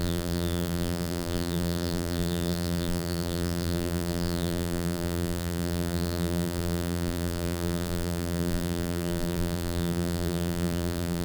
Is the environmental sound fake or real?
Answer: fake